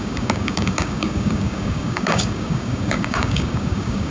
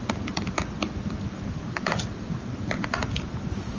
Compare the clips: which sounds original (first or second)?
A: second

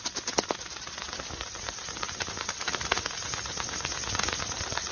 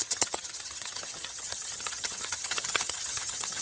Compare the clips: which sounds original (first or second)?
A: first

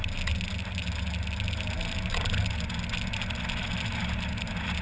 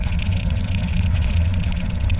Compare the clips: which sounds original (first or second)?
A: first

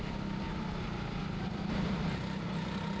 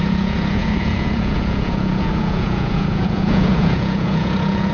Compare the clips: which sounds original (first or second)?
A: first